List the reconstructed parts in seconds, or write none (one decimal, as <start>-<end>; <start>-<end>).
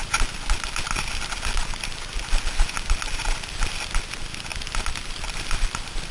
none